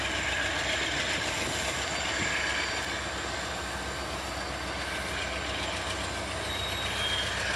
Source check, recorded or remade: recorded